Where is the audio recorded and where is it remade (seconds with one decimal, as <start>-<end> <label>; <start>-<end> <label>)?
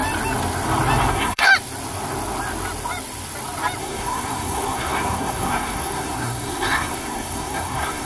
0.0-1.1 recorded; 1.1-1.5 remade; 1.5-3.8 recorded; 3.8-8.1 remade